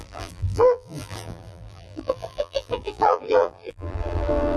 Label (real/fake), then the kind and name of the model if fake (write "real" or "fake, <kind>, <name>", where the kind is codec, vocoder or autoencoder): fake, vocoder, BigVGAN v2